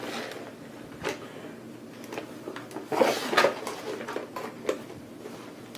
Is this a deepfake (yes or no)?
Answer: no